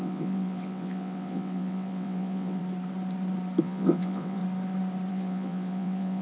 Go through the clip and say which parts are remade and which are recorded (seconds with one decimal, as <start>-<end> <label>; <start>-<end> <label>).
0.0-2.6 remade; 2.6-3.6 recorded; 3.6-4.4 remade; 4.4-5.1 recorded; 5.1-6.2 remade